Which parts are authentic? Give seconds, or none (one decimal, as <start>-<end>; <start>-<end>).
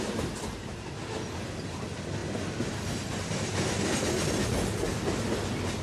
0.0-5.8